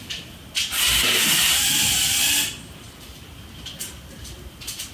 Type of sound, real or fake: real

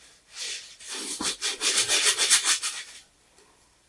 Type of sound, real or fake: real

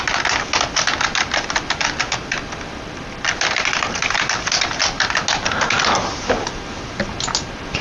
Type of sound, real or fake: real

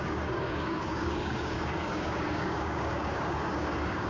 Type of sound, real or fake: fake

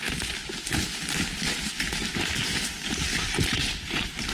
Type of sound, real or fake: real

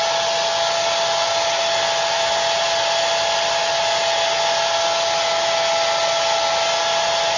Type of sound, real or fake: real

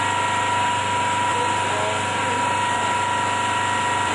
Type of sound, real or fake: real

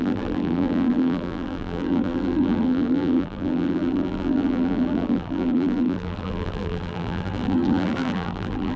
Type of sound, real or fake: fake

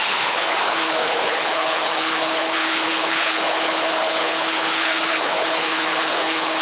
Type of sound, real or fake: fake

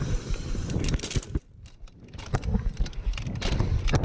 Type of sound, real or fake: real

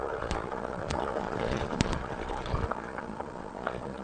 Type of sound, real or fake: fake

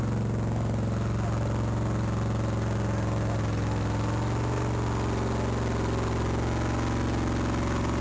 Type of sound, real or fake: real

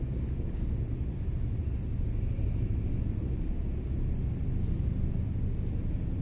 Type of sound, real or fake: real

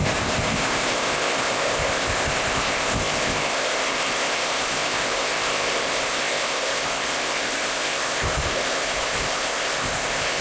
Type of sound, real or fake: fake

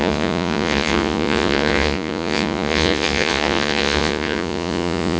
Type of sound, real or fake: fake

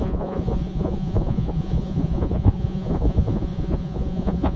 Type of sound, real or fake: fake